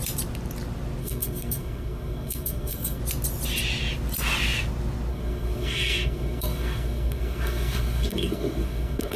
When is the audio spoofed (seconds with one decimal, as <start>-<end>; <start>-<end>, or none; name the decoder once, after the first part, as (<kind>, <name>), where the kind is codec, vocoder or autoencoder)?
1.0-3.0 (codec, SNAC); 5.1-9.2